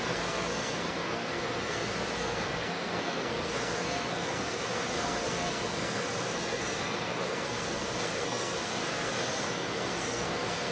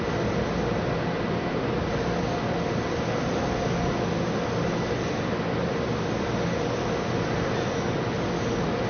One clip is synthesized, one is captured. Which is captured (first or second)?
second